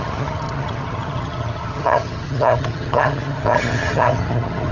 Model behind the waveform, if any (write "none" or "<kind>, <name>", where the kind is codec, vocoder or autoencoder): vocoder, HiFi-GAN